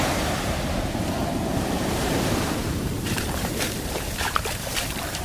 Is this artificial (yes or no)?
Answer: yes